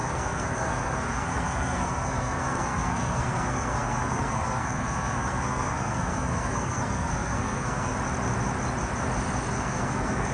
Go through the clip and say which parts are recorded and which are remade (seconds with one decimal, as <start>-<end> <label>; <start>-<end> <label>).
0.0-7.9 remade; 7.9-9.5 recorded; 9.5-10.3 remade

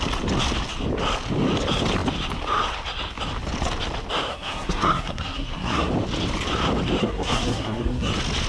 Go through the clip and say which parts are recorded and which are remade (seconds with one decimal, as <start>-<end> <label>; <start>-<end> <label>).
0.0-4.3 recorded; 4.3-5.9 remade; 5.9-7.0 recorded; 7.0-8.1 remade; 8.1-8.5 recorded

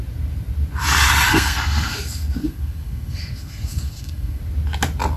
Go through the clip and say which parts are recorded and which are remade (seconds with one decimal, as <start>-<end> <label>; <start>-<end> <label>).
0.0-1.3 recorded; 1.3-4.4 remade; 4.4-5.2 recorded

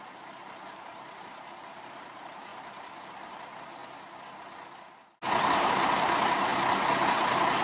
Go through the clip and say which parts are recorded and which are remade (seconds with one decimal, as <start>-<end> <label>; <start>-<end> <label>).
0.0-2.5 remade; 2.5-3.0 recorded; 3.0-3.8 remade; 3.8-5.4 recorded; 5.4-6.5 remade; 6.5-7.6 recorded

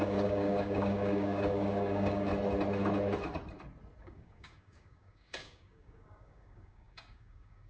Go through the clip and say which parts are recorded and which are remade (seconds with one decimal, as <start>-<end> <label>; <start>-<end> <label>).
0.0-2.3 remade; 2.3-4.0 recorded; 4.0-7.7 remade

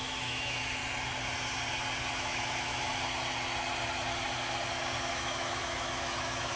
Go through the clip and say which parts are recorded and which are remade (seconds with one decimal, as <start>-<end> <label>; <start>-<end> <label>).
0.0-0.8 remade; 0.8-2.1 recorded; 2.1-2.9 remade; 2.9-5.1 recorded; 5.1-6.6 remade

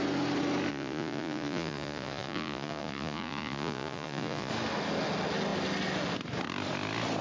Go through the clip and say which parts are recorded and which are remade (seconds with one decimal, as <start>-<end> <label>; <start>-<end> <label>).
0.0-0.7 recorded; 0.7-4.5 remade; 4.5-7.2 recorded

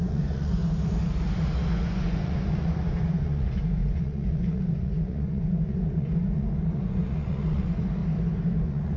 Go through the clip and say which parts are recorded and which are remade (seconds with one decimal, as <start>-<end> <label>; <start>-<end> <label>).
0.0-0.6 remade; 0.6-1.7 recorded; 1.7-8.0 remade; 8.0-8.5 recorded; 8.5-9.0 remade